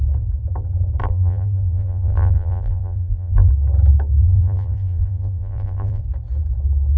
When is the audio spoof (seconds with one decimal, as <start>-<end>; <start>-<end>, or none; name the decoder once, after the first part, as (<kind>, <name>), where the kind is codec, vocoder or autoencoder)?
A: 1.0-3.5 (vocoder, BigVGAN v2); 4.2-6.0